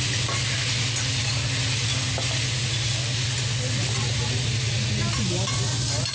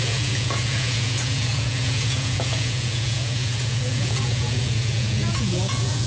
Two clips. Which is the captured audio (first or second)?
first